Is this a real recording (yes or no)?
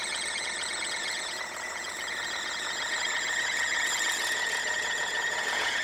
no